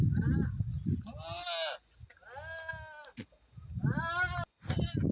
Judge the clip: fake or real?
real